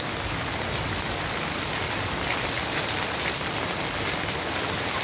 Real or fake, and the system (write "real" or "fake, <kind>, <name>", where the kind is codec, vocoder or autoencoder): real